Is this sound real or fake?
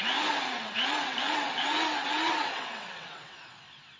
fake